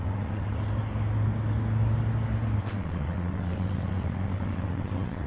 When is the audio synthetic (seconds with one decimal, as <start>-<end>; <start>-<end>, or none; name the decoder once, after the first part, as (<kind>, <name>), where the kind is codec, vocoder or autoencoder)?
0.0-0.6 (vocoder, WaveNeXt); 2.6-5.3